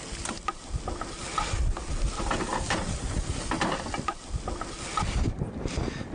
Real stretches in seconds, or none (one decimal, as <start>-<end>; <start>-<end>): 0.0-6.1